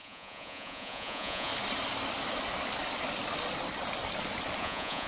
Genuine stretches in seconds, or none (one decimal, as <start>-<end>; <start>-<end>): 1.5-4.6